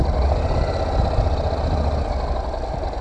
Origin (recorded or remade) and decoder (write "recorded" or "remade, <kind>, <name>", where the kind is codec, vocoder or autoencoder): recorded